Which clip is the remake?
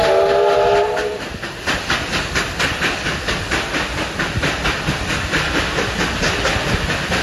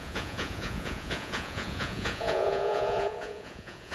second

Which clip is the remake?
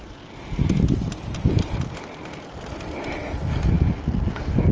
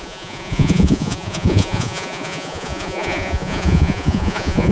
second